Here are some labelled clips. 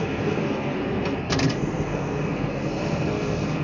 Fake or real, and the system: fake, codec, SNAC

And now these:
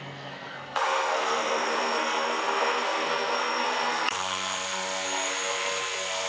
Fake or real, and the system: fake, codec, SNAC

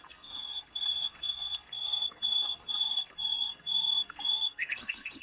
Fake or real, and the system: fake, codec, SNAC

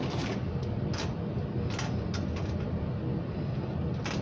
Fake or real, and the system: real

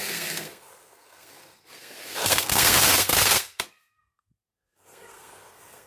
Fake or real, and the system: fake, codec, SNAC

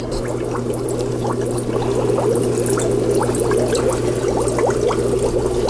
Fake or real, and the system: real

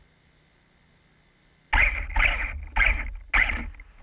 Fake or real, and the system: real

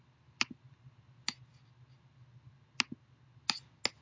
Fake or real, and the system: real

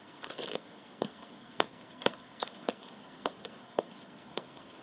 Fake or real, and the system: fake, codec, SNAC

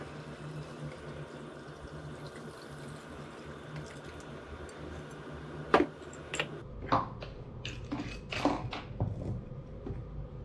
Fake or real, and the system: real